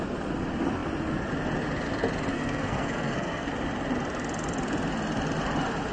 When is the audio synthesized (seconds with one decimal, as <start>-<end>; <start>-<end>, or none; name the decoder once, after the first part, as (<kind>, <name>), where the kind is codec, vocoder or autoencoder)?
2.3-3.5 (codec, SNAC)